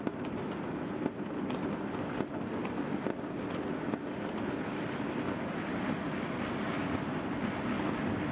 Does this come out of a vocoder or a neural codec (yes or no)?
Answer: no